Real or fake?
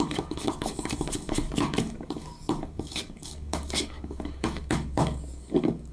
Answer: fake